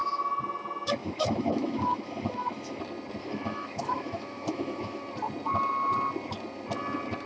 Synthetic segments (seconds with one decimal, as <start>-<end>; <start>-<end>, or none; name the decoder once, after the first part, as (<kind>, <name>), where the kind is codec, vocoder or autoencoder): 1.0-2.8 (autoencoder, DAC-VAE); 3.2-5.0